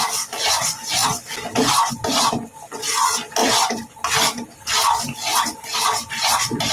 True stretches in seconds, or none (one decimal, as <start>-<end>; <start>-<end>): 0.0-6.7